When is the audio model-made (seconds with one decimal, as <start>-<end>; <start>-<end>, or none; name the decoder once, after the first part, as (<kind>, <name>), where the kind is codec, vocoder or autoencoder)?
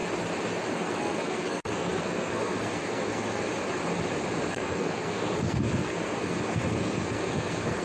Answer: 0.7-3.5 (codec, SNAC); 4.5-7.8